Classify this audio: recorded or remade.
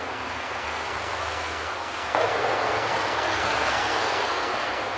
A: remade